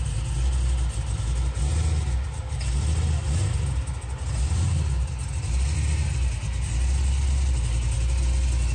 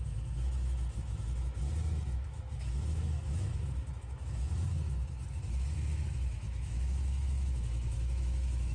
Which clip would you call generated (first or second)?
second